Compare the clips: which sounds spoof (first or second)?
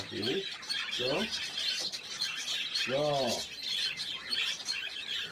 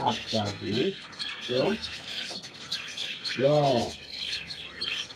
second